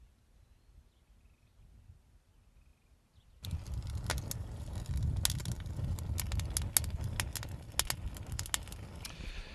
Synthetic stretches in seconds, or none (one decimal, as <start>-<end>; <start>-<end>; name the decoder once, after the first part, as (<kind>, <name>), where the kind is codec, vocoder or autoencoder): none